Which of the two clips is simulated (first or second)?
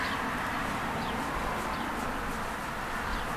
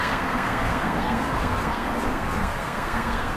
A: second